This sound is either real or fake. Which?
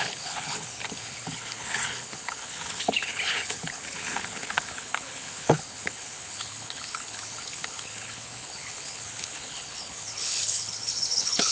fake